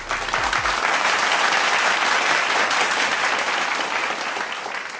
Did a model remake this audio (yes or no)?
no